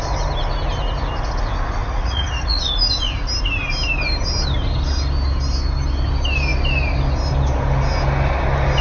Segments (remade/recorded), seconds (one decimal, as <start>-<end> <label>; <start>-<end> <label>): 0.0-1.8 recorded; 1.8-2.7 remade; 2.7-8.8 recorded